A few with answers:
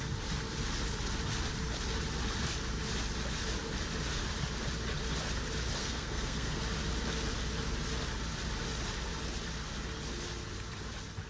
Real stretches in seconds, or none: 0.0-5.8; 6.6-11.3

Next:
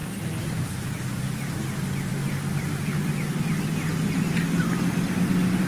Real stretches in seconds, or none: 0.0-5.7

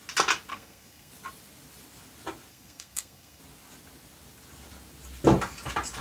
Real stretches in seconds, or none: 0.0-0.5; 1.1-2.5; 3.4-6.0

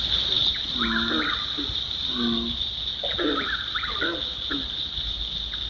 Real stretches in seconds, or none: 0.0-5.7